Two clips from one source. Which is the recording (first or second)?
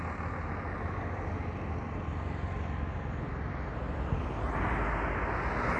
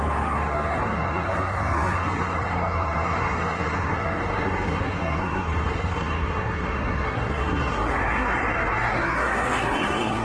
first